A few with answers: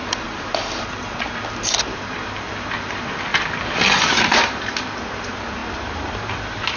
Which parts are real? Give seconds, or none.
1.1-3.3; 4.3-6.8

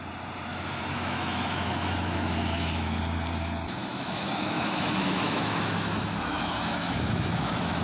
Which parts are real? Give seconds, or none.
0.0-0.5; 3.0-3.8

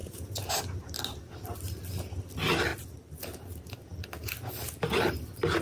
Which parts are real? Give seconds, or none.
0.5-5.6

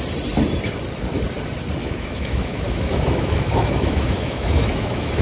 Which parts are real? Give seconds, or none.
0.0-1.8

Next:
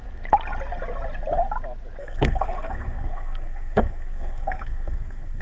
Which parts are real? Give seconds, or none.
0.0-2.0

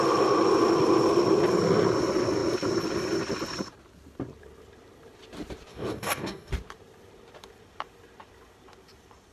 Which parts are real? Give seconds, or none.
0.0-5.7; 6.5-9.3